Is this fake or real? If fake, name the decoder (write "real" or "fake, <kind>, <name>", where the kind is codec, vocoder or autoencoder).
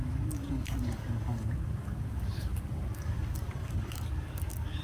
fake, codec, DAC